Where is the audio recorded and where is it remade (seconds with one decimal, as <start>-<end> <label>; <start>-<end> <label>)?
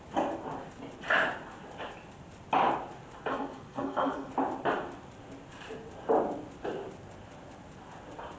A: 0.0-3.3 recorded; 3.3-4.3 remade; 4.3-8.4 recorded